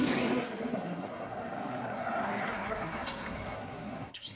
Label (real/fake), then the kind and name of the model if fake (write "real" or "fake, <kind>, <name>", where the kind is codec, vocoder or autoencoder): fake, codec, SNAC